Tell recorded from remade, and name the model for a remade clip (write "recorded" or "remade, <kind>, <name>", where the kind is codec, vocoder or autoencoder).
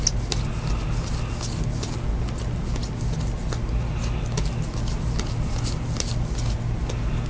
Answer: recorded